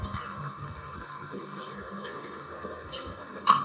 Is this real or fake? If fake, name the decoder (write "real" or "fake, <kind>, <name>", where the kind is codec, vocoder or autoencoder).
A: fake, codec, SNAC